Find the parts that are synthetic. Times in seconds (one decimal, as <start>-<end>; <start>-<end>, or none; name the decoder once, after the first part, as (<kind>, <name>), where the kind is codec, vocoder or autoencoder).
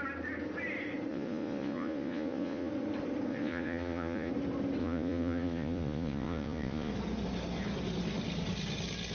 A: 1.1-2.7 (vocoder, Vocos); 3.3-4.3; 4.8-6.9